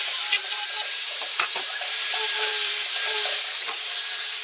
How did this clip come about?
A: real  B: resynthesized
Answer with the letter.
B